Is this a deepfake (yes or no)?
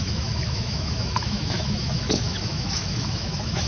yes